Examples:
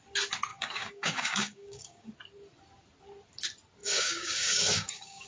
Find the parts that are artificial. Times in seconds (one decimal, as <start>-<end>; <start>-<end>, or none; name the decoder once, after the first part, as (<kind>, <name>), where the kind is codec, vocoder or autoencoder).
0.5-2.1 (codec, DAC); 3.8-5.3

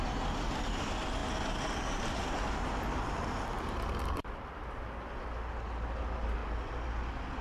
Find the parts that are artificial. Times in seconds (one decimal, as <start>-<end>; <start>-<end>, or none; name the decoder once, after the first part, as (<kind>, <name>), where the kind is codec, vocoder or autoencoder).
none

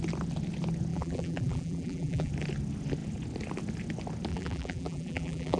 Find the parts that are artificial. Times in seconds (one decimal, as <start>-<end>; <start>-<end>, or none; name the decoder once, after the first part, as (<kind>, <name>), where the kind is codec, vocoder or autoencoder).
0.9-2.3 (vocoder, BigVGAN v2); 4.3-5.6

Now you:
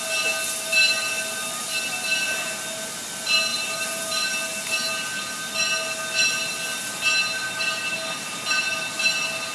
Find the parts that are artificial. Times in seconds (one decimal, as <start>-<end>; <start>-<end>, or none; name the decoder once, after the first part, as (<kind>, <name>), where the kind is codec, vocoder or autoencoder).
3.5-4.0 (vocoder, BigVGAN v2)